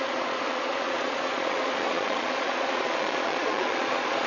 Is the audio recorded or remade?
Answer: remade